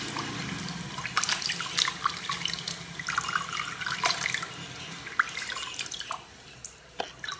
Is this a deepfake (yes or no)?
no